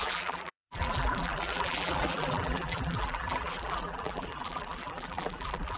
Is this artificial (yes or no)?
yes